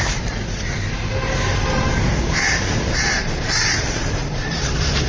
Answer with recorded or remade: remade